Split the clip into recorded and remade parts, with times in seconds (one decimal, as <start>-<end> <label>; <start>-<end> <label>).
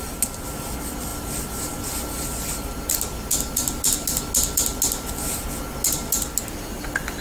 0.0-7.2 recorded